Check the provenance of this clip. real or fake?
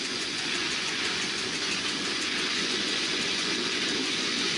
fake